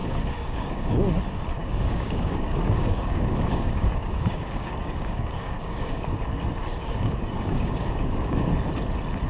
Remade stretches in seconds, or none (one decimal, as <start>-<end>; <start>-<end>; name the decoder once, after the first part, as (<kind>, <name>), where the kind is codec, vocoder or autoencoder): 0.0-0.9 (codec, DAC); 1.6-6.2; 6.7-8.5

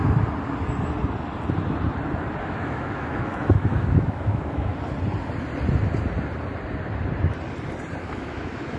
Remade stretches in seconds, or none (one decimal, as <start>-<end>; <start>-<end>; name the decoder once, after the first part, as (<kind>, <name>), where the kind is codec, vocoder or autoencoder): 2.4-4.7 (autoencoder, DAC-VAE); 8.0-8.8

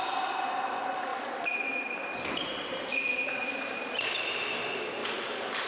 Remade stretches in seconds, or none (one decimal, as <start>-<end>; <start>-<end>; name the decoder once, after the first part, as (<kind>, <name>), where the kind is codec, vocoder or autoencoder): 1.1-4.5 (vocoder, BigVGAN v2); 5.0-5.7

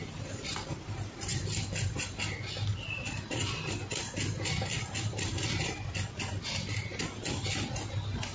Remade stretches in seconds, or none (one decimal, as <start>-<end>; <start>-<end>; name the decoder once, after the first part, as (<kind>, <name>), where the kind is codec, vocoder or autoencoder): none